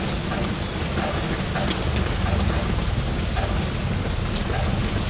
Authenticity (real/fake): real